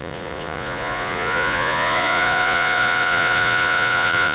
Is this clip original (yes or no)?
no